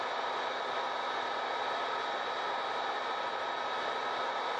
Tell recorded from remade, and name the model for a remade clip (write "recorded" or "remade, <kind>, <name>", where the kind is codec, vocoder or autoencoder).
recorded